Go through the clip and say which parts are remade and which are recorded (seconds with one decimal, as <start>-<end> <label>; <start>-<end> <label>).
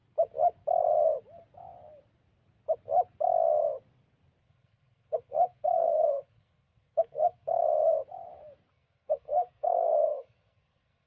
0.0-4.4 recorded; 4.4-7.6 remade; 7.6-8.7 recorded; 8.7-11.1 remade